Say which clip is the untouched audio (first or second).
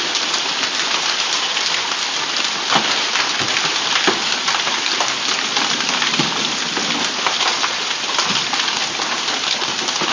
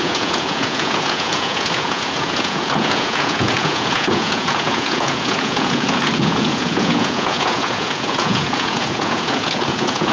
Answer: first